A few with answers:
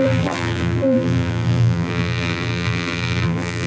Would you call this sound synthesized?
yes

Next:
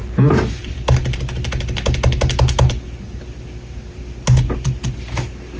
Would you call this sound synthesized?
no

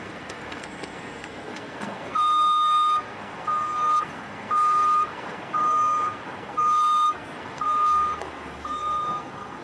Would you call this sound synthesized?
yes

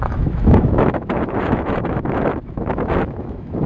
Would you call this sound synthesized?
yes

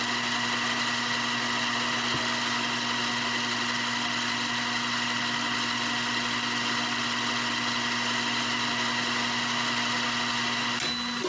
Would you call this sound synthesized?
no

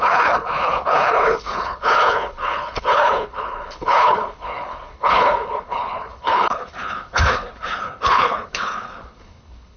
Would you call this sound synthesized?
yes